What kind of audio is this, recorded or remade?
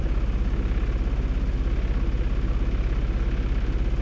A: recorded